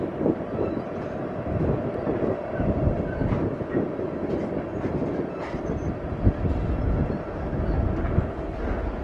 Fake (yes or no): no